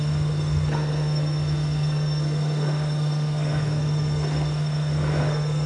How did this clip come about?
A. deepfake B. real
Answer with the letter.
A